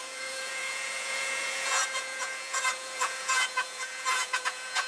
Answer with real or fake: fake